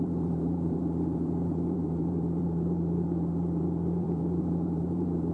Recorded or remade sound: remade